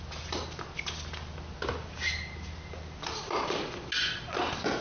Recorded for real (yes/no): yes